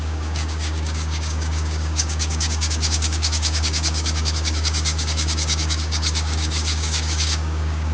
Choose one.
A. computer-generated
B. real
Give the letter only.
A